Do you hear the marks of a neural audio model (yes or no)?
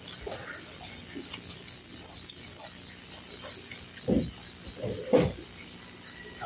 no